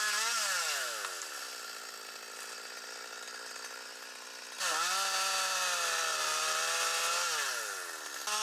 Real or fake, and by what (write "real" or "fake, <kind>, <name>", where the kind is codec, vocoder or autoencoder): real